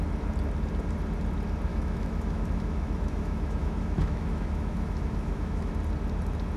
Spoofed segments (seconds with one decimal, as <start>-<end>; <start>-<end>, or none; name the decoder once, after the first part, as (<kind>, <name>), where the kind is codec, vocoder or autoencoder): 1.7-5.7 (autoencoder, DAC-VAE)